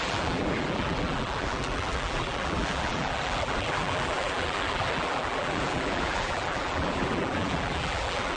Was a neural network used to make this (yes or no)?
yes